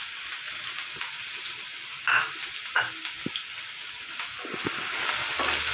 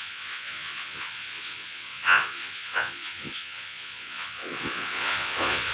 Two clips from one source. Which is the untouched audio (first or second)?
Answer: first